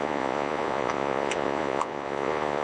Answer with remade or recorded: remade